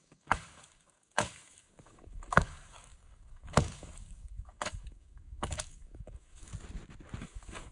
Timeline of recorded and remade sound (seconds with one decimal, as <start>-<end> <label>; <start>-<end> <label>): 0.0-6.5 remade; 6.5-7.2 recorded; 7.2-7.7 remade